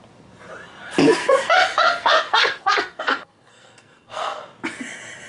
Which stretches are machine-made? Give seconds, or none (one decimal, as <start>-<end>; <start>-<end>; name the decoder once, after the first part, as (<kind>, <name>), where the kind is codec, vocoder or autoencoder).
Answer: 1.2-4.4 (codec, SNAC)